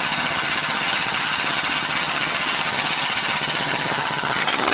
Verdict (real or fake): fake